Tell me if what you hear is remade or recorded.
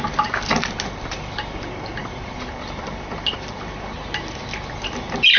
recorded